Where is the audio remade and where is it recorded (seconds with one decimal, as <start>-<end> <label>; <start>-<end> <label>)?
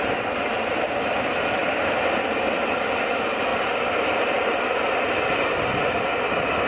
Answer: 0.0-1.6 recorded; 1.6-2.4 remade; 2.4-3.5 recorded; 3.5-4.8 remade; 4.8-6.7 recorded